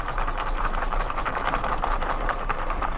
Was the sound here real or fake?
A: fake